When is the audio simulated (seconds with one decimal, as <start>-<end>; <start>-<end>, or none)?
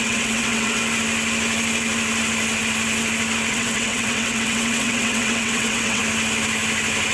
0.0-0.8; 3.5-6.0